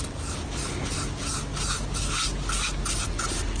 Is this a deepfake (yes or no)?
no